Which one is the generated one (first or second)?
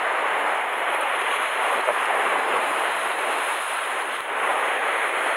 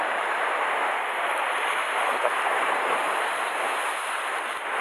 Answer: first